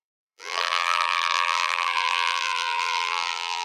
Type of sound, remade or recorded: remade